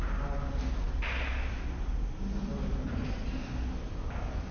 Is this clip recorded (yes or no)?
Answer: yes